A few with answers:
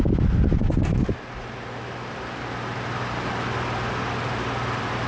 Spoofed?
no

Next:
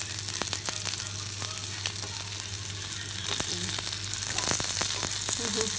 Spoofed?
no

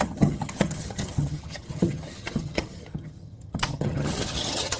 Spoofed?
yes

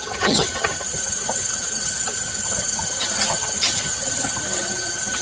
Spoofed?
yes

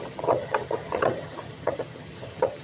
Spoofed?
yes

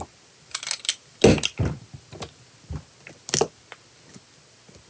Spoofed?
no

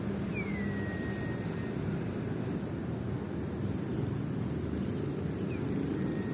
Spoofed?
no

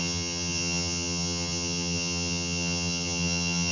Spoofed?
yes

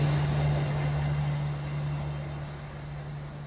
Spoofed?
no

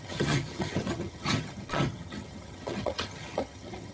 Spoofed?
yes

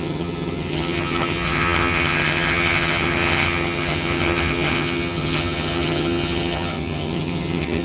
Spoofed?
yes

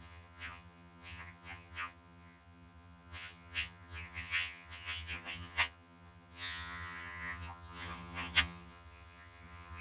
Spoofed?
yes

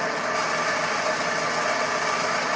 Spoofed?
no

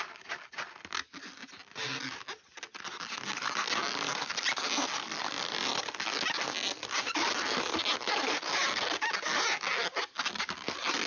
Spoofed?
no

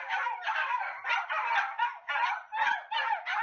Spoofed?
no